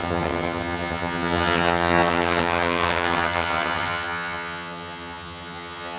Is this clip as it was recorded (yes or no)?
no